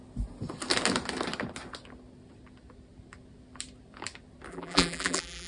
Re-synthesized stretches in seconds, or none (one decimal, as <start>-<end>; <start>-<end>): 4.5-5.5